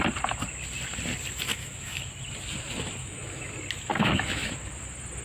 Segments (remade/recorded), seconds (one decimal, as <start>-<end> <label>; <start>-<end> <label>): 0.0-1.5 recorded; 1.5-2.1 remade; 2.1-3.0 recorded; 3.0-3.5 remade; 3.5-3.9 recorded; 3.9-4.5 remade; 4.5-5.2 recorded